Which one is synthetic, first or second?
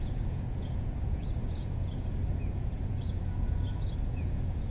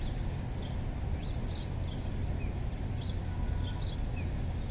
first